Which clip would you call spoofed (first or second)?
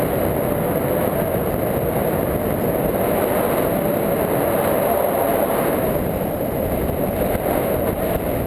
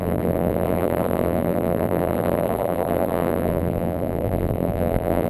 second